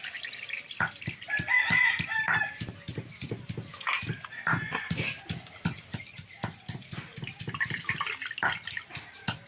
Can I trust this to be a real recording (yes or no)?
yes